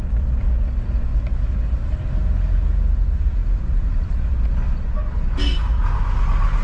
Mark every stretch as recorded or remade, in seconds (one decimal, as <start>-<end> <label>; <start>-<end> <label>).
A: 0.0-1.1 recorded; 1.1-2.0 remade; 2.0-3.4 recorded; 3.4-4.4 remade; 4.4-6.6 recorded